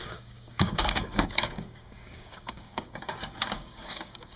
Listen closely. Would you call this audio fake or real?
fake